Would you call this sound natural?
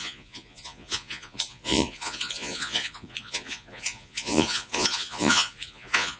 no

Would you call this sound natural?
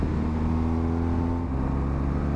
yes